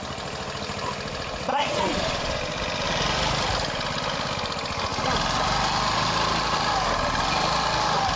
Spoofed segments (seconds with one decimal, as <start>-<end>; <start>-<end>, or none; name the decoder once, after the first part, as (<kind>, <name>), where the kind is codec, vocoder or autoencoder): 1.5-2.4 (vocoder, Vocos)